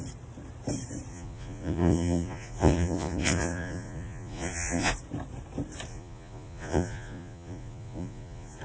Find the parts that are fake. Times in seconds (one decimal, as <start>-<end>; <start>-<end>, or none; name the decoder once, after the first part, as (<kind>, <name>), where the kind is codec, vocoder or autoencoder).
1.1-4.9 (vocoder, Vocos); 5.9-8.6